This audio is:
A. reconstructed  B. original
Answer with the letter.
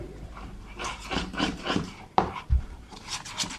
A